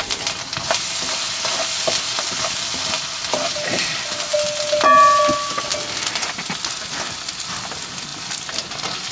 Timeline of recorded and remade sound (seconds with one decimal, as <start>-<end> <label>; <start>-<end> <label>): 0.0-9.1 recorded